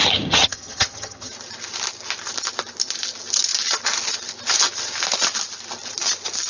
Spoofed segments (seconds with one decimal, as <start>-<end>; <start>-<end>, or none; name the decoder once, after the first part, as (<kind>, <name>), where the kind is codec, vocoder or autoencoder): 0.0-1.3 (vocoder, HiFi-GAN)